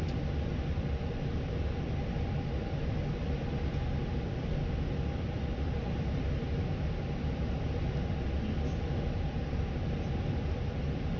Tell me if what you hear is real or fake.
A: fake